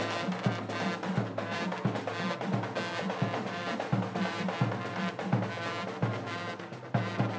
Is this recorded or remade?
recorded